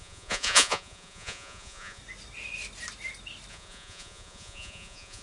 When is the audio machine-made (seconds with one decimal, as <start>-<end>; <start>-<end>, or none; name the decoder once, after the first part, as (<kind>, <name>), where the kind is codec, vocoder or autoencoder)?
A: 0.0-2.0 (vocoder, Vocos); 3.5-5.2